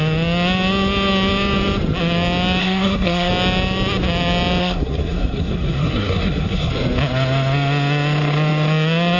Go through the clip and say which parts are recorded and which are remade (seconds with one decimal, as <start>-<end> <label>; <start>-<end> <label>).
0.0-2.6 recorded; 2.6-3.3 remade; 3.3-4.6 recorded; 4.6-6.7 remade; 6.7-9.2 recorded